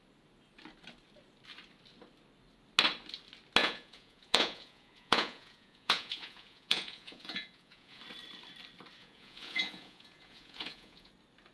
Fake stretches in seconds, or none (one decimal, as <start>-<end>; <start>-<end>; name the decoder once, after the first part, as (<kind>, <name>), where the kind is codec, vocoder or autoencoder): 3.6-8.0 (vocoder, Vocos); 9.0-11.1